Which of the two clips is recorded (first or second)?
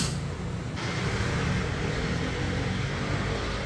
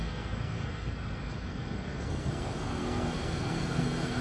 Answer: first